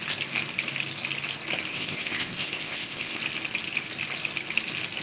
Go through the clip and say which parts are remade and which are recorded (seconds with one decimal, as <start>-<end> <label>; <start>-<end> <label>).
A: 0.0-1.7 recorded; 1.7-3.2 remade; 3.2-5.0 recorded